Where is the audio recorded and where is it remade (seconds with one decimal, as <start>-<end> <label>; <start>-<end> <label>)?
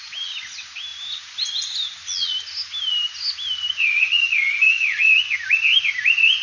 0.0-3.8 recorded; 3.8-5.1 remade; 5.1-6.4 recorded